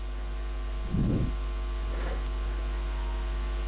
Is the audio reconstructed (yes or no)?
no